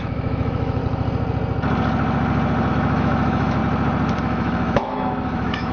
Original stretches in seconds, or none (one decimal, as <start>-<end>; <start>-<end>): 0.8-2.7; 3.6-4.2